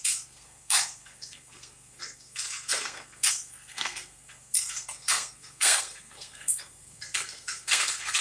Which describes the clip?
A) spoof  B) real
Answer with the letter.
A